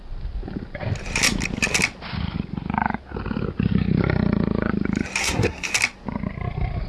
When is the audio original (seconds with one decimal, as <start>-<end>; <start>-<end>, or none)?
0.0-5.2; 5.7-6.9